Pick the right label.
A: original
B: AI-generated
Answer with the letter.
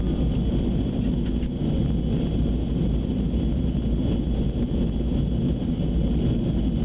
A